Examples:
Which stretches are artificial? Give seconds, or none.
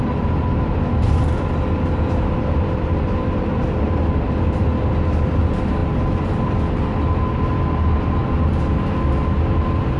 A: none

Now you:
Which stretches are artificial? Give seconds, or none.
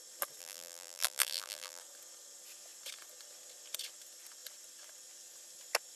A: 0.4-1.8 (vocoder, BigVGAN v2)